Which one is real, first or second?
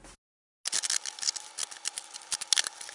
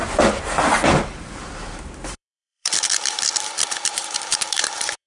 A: first